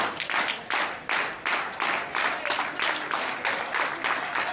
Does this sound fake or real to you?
real